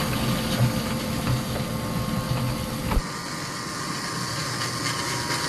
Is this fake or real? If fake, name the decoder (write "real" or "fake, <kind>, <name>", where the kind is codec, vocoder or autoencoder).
real